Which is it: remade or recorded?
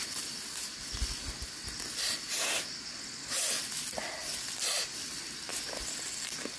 recorded